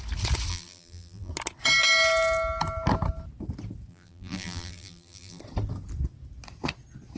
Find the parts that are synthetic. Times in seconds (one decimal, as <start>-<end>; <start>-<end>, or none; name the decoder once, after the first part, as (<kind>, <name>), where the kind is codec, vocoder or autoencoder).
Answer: 0.5-1.3 (vocoder, BigVGAN v2); 3.9-5.4